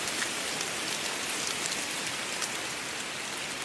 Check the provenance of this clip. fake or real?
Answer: real